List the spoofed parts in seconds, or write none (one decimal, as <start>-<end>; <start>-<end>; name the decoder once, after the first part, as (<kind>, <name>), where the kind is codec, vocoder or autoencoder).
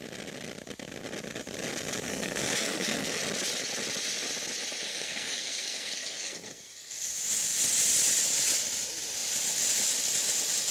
2.1-3.2 (codec, SNAC); 4.9-7.1